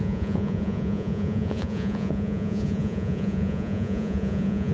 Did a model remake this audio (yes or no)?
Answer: yes